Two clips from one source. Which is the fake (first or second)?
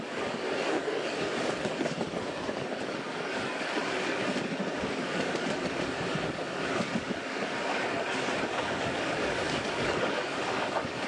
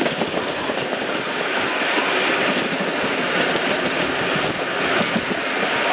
first